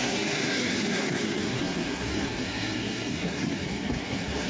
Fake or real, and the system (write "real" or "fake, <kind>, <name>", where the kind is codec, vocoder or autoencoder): fake, codec, SNAC